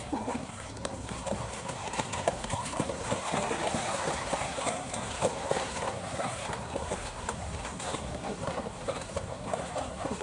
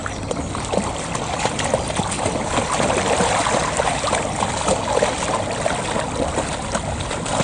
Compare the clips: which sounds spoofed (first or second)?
first